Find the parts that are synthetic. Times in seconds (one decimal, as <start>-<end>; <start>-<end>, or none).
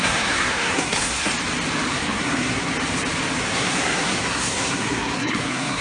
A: 0.0-1.3; 1.9-2.7; 3.4-5.8